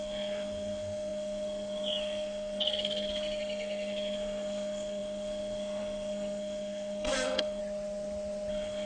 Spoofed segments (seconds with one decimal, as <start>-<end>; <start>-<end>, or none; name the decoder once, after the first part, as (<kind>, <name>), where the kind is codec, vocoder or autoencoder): 0.0-7.6 (codec, SNAC); 8.5-8.9